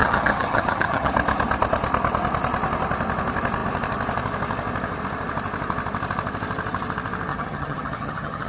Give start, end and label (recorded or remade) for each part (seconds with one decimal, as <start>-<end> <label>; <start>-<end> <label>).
0.0-1.1 remade; 1.1-7.3 recorded; 7.3-8.5 remade